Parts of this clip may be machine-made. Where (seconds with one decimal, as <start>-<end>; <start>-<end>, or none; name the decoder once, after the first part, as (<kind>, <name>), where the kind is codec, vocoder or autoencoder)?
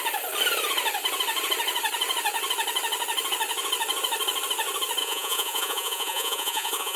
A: 5.0-7.0 (vocoder, Vocos)